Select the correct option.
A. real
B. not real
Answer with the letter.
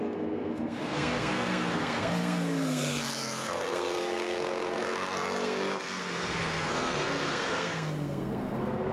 B